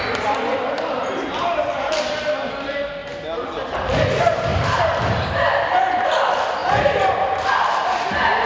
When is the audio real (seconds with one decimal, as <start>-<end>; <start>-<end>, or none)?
0.0-1.4; 1.9-4.5; 5.3-8.5